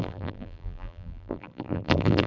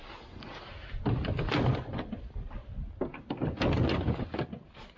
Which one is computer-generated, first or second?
first